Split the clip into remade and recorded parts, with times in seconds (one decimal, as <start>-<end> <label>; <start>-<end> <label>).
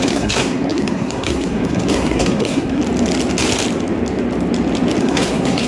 0.0-2.8 remade; 2.8-5.0 recorded; 5.0-5.7 remade